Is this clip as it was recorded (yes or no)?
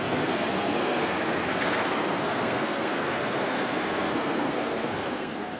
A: no